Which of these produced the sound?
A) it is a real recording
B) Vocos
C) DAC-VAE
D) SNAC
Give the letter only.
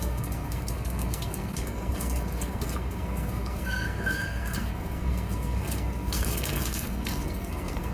D